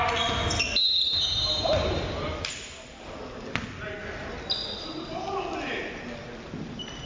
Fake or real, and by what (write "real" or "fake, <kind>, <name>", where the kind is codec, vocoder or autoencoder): real